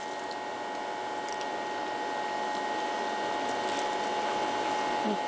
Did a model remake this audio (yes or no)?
no